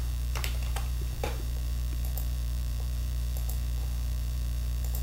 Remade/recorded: remade